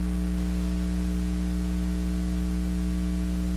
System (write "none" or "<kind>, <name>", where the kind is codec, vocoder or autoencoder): none